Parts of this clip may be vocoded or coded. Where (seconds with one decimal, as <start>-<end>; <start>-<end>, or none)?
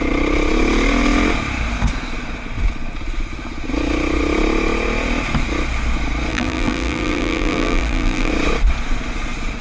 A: 6.3-8.3